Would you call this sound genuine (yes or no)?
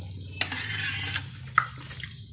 yes